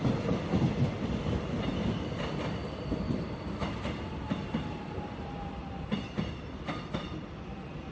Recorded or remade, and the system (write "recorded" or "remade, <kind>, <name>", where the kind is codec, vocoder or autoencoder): recorded